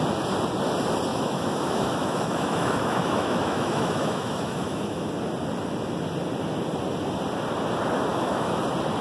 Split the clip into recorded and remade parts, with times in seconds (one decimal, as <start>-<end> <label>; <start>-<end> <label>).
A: 0.0-1.1 recorded; 1.1-5.1 remade; 5.1-8.1 recorded; 8.1-8.6 remade; 8.6-9.0 recorded